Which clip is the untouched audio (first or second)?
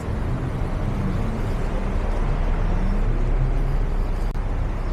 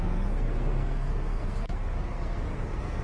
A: first